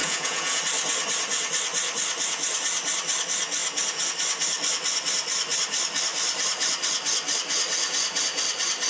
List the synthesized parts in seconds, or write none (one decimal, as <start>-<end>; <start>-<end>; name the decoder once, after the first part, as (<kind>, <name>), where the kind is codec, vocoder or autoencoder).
0.0-0.6 (vocoder, Vocos)